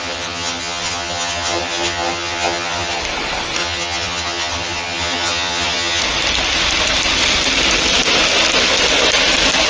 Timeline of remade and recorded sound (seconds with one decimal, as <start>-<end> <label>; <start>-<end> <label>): 0.0-3.0 remade; 3.0-3.6 recorded; 3.6-6.0 remade; 6.0-9.7 recorded